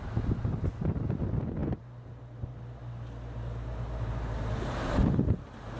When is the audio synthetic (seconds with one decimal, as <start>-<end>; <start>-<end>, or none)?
none